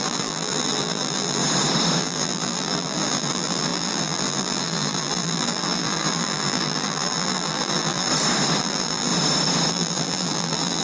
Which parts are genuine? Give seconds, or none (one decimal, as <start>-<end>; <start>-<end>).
1.4-2.0; 8.1-8.6; 9.1-9.7